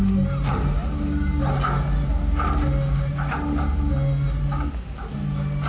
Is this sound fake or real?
real